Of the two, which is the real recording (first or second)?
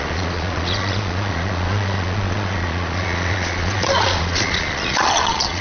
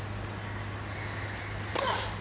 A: second